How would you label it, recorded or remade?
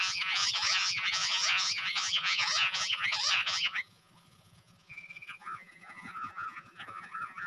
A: remade